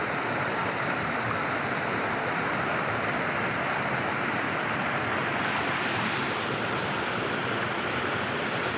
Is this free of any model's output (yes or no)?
yes